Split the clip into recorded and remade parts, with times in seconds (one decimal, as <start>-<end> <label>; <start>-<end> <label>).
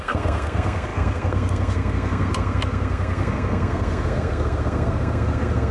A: 0.0-5.7 remade